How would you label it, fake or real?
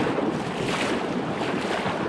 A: real